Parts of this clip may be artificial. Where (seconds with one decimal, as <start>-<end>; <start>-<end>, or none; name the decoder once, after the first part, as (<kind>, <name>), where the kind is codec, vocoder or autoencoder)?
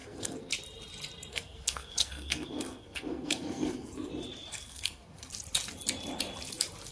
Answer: 0.0-0.5 (codec, SNAC); 1.3-4.1; 4.5-5.3